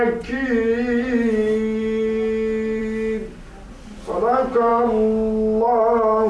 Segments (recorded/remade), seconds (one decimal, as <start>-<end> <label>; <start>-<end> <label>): 0.0-6.3 recorded